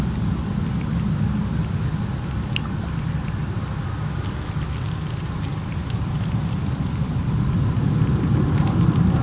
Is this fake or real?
real